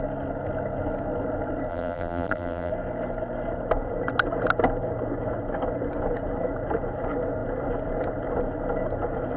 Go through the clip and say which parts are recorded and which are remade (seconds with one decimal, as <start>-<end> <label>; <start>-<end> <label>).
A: 0.0-1.7 recorded; 1.7-2.7 remade; 2.7-9.4 recorded